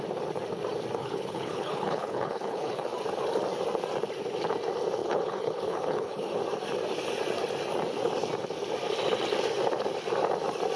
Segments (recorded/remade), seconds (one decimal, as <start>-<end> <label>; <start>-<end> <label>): 0.0-1.0 recorded; 1.0-2.9 remade; 2.9-5.0 recorded; 5.0-6.4 remade; 6.4-10.8 recorded